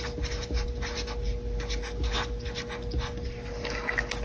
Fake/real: real